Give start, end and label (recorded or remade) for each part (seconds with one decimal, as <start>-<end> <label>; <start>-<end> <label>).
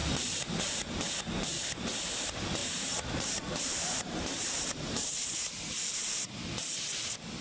0.0-2.6 recorded; 2.6-6.2 remade; 6.2-7.4 recorded